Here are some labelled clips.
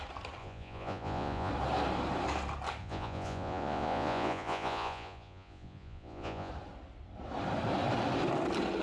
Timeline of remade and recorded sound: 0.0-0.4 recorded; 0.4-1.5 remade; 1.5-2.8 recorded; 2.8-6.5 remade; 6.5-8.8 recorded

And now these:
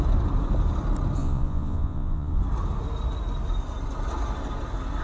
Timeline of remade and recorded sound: 0.0-1.2 recorded; 1.2-2.4 remade; 2.4-5.0 recorded